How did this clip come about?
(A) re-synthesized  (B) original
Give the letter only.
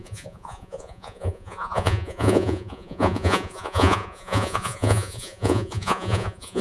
A